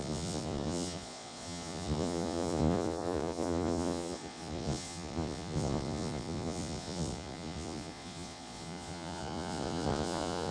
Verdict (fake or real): fake